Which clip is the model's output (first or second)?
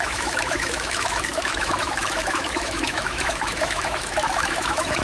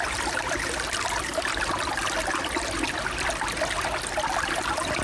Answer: first